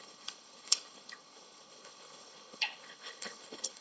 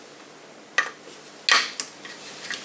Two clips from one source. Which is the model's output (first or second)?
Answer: first